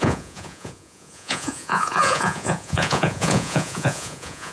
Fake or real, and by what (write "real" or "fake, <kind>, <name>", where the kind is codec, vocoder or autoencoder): fake, vocoder, Vocos